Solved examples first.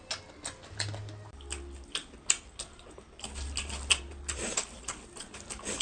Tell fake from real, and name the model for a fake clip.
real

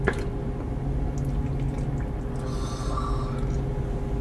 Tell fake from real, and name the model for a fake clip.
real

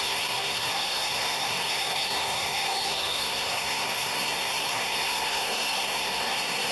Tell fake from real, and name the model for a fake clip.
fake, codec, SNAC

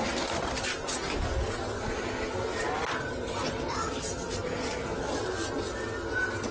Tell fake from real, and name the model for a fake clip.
real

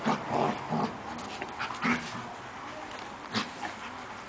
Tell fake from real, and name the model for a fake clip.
real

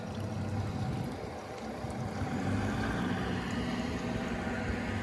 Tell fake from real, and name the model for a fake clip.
real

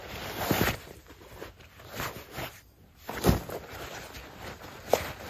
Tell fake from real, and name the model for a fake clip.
real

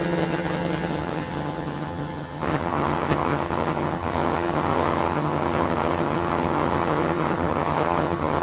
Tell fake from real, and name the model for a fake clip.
fake, vocoder, HiFi-GAN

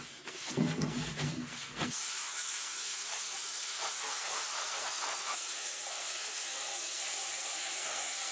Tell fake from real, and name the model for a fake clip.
fake, codec, SNAC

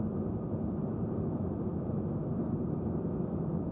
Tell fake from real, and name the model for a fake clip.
real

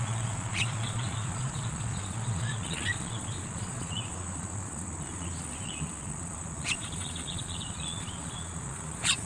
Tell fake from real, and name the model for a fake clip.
fake, vocoder, Vocos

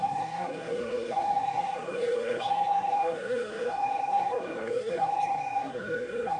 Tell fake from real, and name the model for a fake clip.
fake, codec, SNAC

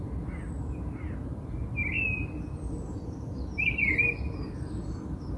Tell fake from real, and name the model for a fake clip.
real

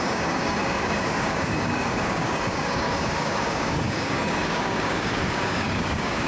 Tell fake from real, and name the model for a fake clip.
fake, codec, DAC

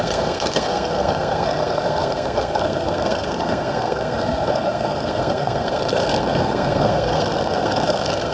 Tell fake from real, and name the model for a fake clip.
fake, codec, SNAC